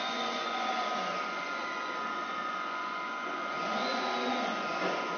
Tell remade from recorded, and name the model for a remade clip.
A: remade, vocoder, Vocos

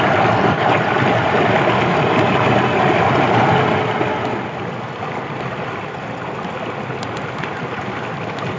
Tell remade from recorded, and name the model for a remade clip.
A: recorded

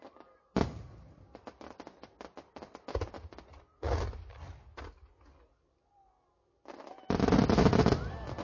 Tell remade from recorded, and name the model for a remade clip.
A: recorded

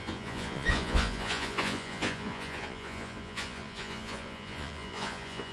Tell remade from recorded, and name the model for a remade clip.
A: remade, vocoder, Vocos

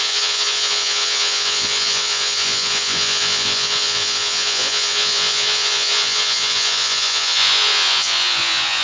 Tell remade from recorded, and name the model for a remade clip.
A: remade, vocoder, Vocos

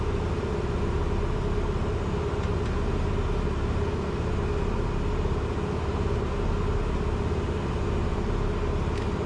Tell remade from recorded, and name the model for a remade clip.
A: recorded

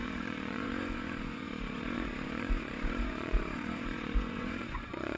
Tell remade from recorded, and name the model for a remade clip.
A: remade, vocoder, Vocos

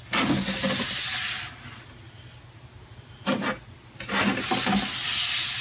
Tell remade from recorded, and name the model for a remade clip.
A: recorded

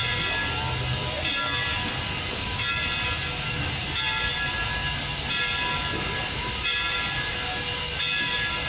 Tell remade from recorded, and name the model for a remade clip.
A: recorded